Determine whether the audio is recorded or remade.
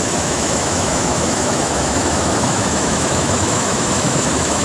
remade